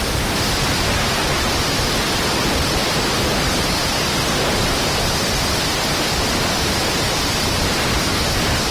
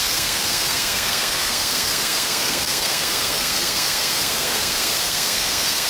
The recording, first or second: first